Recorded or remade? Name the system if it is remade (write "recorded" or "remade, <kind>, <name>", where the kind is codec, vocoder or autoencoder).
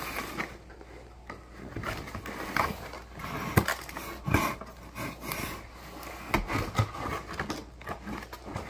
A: recorded